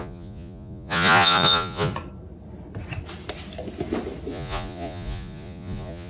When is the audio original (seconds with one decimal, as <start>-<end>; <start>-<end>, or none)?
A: 1.9-4.3